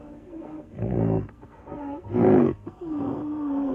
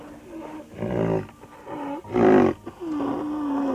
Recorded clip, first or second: second